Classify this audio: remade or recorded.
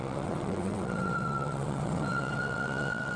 remade